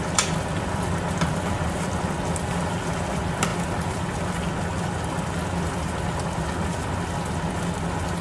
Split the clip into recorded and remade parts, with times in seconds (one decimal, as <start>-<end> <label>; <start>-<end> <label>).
0.0-8.2 recorded